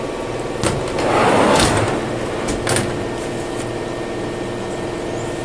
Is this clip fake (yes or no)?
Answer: no